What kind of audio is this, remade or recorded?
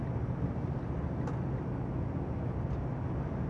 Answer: recorded